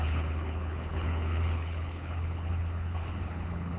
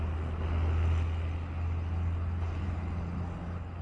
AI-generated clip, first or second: first